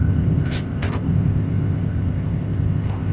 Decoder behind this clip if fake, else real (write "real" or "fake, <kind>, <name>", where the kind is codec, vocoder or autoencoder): fake, codec, ZipCodec